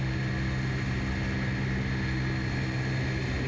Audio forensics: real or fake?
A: real